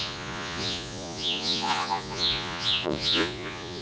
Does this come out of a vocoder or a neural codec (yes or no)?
yes